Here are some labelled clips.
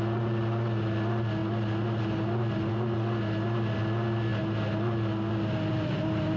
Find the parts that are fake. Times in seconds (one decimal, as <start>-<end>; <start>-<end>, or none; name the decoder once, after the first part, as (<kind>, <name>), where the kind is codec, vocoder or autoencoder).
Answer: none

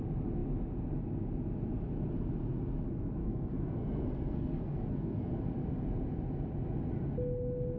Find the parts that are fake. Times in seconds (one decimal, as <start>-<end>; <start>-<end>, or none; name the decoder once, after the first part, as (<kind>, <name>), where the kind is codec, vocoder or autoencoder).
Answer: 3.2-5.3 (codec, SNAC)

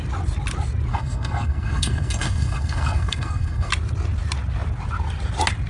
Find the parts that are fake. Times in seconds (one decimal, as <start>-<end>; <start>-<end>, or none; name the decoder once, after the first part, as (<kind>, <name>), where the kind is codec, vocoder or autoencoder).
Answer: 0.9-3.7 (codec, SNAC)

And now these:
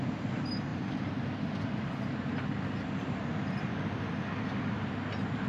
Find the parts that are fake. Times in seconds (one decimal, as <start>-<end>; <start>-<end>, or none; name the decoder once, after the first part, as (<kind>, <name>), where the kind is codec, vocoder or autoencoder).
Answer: none